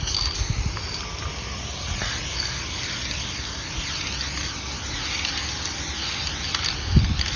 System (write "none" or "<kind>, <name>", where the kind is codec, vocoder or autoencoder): none